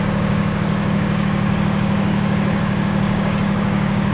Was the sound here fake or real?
fake